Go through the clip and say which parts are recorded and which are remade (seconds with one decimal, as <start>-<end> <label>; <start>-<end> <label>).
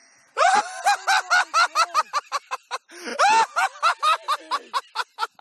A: 0.0-0.6 remade; 0.6-5.4 recorded